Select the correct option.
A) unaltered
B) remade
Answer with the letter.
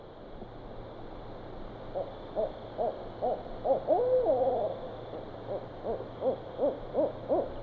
A